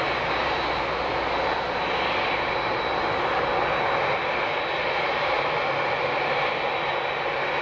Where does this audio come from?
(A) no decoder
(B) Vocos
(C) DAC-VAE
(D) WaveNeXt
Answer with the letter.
A